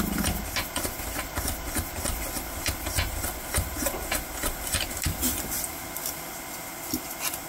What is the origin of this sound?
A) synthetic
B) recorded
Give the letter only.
B